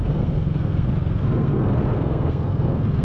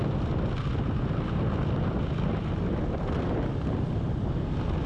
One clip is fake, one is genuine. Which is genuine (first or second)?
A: second